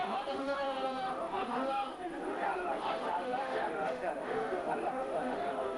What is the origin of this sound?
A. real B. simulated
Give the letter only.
B